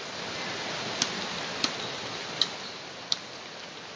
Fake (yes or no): no